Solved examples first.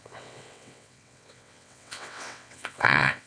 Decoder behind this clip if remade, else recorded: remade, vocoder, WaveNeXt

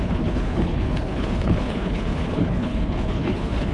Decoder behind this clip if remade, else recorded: remade, codec, HILCodec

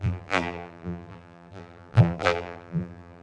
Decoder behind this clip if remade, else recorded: remade, vocoder, BigVGAN v2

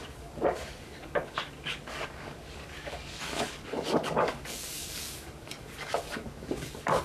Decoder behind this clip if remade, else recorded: remade, codec, DAC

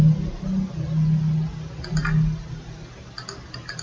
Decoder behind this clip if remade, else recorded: recorded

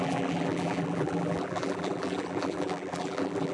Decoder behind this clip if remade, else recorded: remade, vocoder, BigVGAN v2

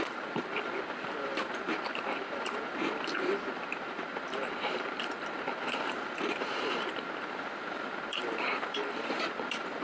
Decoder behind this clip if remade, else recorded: remade, vocoder, BigVGAN v2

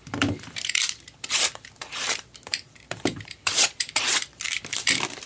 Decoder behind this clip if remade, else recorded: remade, vocoder, BigVGAN v2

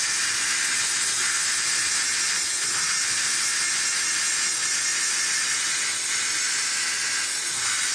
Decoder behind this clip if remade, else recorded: recorded